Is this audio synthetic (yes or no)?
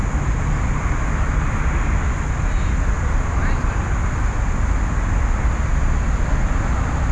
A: no